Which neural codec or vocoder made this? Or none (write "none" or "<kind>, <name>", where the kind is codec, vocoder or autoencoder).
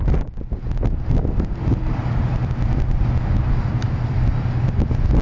none